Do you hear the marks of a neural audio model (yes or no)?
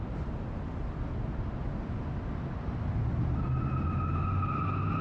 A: no